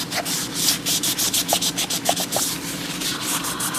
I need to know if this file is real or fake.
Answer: real